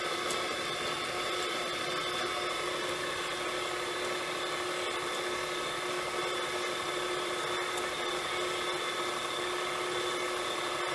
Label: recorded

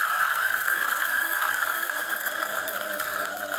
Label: remade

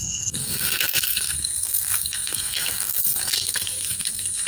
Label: remade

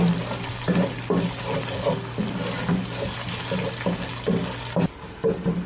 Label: recorded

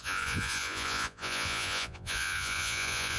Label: remade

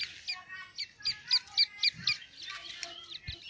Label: recorded